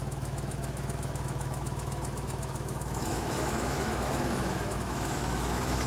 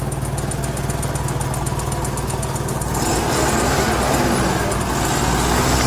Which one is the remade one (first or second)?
first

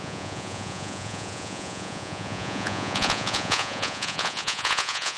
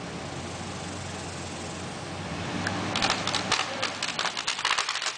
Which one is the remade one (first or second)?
first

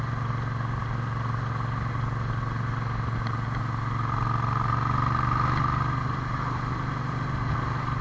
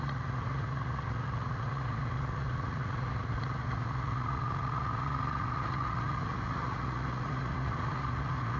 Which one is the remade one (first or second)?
second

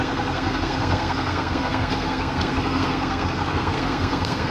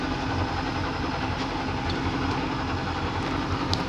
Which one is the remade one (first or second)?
first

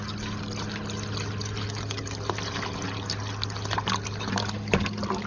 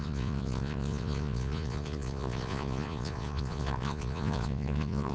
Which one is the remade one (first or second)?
second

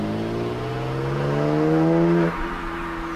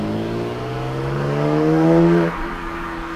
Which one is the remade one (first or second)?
second